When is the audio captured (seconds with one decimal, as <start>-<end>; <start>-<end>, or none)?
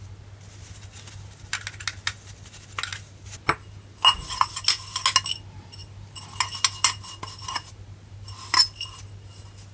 0.0-9.7